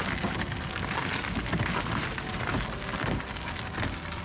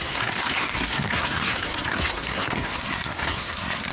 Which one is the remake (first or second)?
second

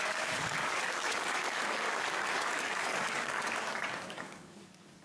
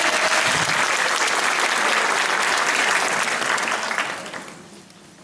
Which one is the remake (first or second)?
first